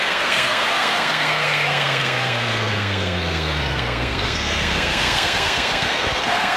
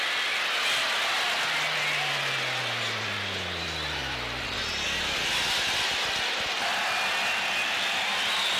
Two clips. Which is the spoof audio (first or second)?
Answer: first